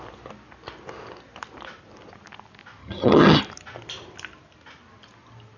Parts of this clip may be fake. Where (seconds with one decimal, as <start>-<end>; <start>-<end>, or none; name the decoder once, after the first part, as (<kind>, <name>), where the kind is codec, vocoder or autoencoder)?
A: 2.8-3.4 (vocoder, HiFi-GAN)